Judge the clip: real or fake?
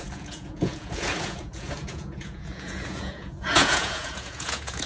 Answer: fake